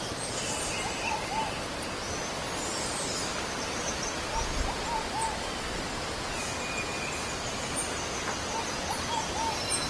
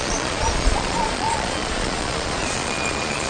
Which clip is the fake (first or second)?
second